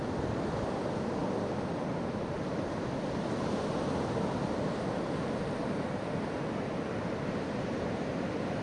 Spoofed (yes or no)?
no